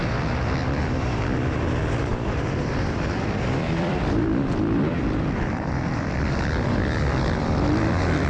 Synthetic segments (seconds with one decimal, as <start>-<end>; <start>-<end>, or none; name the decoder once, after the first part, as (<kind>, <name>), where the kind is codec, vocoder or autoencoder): 0.6-1.2 (vocoder, BigVGAN v2); 2.1-7.1